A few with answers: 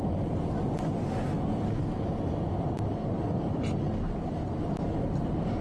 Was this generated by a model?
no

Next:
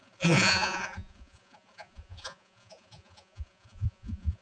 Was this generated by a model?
yes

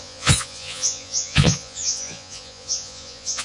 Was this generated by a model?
yes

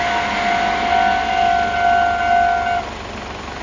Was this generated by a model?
no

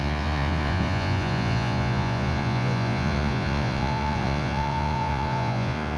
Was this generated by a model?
yes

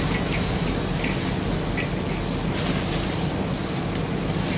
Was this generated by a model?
no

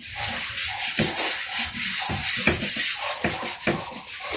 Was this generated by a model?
no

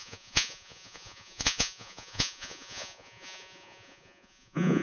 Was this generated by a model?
yes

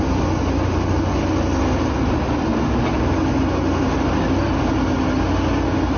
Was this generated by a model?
no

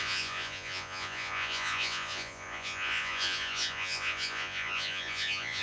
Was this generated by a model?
yes